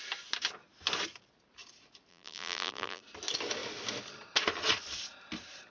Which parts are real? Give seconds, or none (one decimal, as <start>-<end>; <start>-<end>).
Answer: 0.0-2.1; 3.0-5.7